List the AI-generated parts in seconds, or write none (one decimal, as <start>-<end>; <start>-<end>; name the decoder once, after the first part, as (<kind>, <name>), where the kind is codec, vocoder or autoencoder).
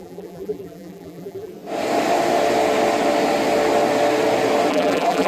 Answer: 0.0-1.5 (vocoder, BigVGAN v2); 4.7-5.3